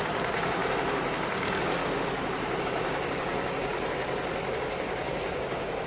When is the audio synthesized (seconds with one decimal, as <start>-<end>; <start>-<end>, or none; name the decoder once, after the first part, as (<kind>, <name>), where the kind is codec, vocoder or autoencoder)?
0.0-0.6 (codec, DAC); 1.3-1.8; 2.6-3.7; 4.5-5.9